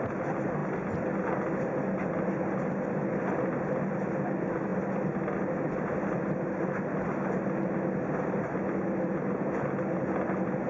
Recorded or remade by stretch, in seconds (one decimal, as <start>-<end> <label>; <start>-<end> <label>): 0.0-10.7 recorded